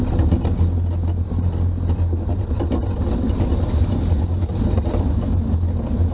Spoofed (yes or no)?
no